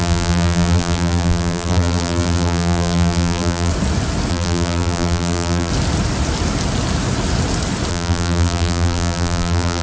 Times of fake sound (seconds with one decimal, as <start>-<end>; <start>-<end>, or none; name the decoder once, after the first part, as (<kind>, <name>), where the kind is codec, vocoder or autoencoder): 0.0-3.7 (vocoder, BigVGAN v2); 4.3-5.7; 7.9-9.8